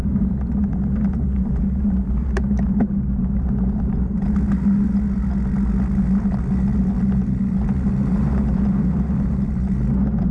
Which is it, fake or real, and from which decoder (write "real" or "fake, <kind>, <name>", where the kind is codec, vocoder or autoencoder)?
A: real